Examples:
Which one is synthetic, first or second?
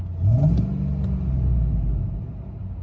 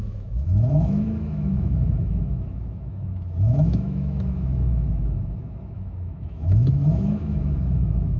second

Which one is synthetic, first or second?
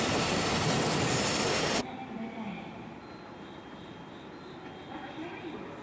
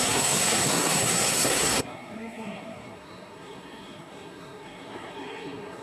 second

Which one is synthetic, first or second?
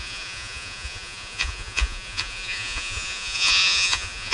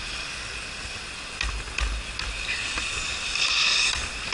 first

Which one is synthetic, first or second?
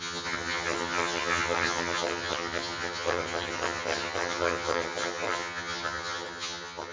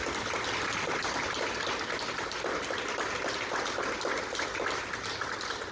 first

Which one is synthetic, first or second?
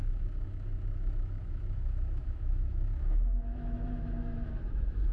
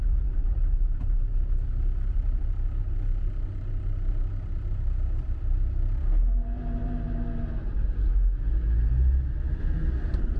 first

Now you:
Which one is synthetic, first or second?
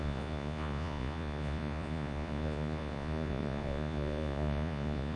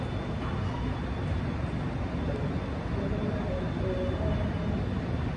first